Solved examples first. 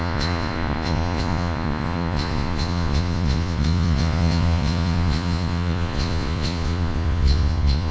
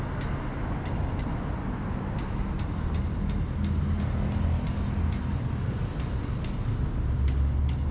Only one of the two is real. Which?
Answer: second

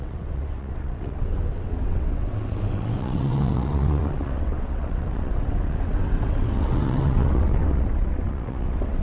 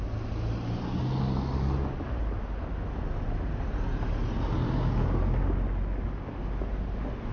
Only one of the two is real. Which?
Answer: second